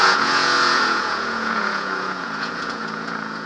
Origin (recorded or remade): remade